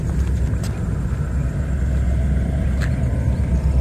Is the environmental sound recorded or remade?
recorded